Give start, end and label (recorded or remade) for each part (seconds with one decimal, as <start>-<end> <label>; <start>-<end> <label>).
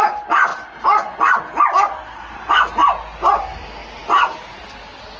0.0-5.2 recorded